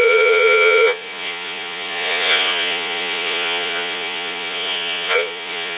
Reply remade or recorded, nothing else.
remade